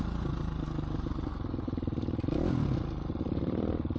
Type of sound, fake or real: real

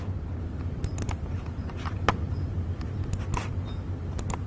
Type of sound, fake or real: real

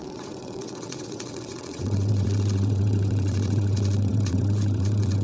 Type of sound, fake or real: fake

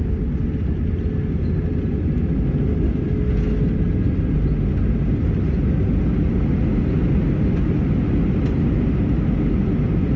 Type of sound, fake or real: real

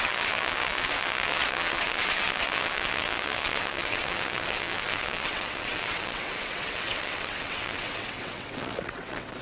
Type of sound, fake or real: fake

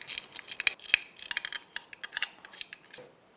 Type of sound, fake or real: real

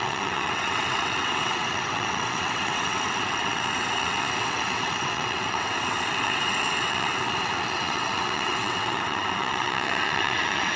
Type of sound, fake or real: fake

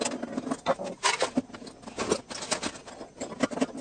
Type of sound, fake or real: real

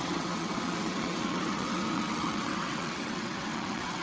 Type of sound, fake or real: fake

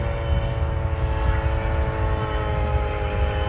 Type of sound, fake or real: real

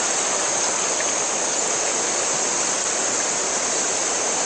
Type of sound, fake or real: real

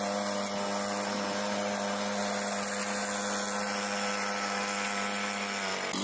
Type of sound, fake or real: real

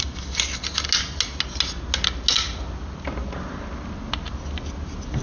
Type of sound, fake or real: real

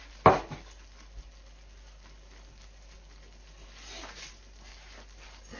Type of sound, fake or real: real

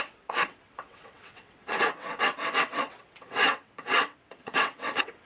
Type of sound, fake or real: fake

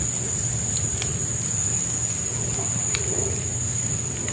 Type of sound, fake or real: real